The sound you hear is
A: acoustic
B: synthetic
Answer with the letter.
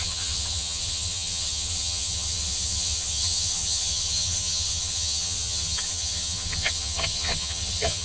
B